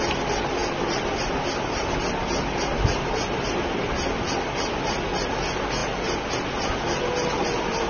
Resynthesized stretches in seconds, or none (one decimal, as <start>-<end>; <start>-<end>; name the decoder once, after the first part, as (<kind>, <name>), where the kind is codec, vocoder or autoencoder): none